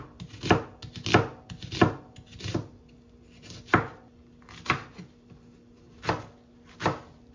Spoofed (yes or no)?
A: no